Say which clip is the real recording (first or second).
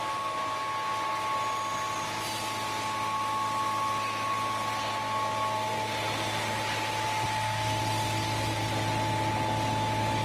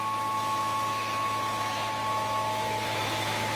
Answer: first